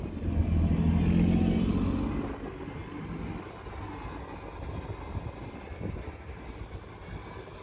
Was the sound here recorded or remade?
recorded